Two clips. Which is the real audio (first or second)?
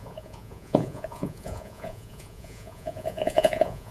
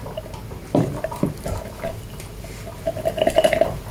second